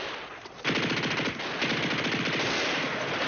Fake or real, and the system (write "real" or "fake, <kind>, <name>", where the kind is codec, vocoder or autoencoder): real